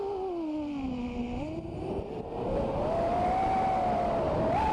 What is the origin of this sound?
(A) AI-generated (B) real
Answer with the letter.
B